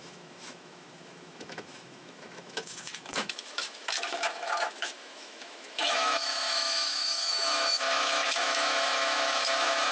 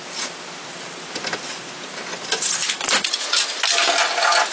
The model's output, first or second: first